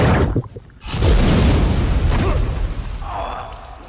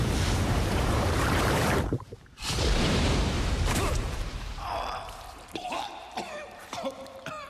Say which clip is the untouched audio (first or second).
first